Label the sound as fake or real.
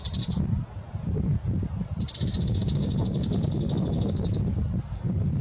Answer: real